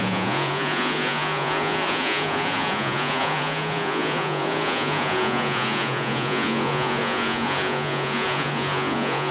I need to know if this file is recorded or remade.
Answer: remade